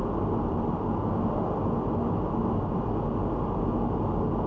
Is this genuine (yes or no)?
yes